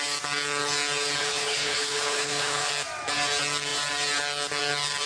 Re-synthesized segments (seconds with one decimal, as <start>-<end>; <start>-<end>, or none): 1.2-2.7